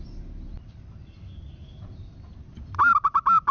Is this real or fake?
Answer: real